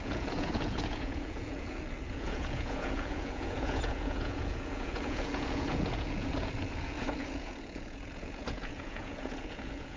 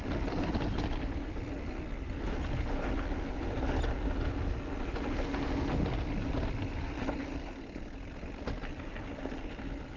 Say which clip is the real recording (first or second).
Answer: second